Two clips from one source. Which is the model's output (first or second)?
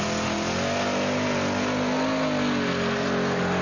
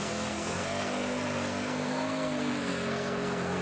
second